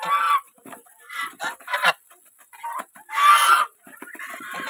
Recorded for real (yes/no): yes